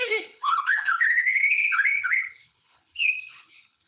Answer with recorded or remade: remade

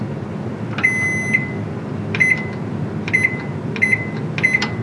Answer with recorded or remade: recorded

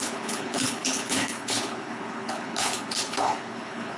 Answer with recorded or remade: remade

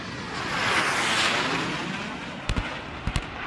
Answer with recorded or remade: recorded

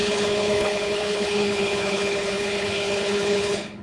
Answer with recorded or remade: remade